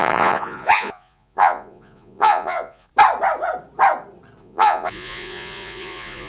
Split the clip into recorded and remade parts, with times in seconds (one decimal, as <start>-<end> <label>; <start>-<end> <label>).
0.0-2.9 remade; 2.9-4.4 recorded; 4.4-6.3 remade